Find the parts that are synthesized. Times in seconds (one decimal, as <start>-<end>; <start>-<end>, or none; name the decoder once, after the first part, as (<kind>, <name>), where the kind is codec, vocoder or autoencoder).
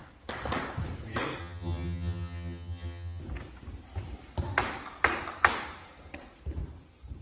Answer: 1.4-3.2 (vocoder, HiFi-GAN)